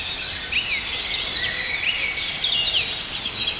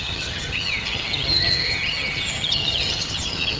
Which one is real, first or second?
first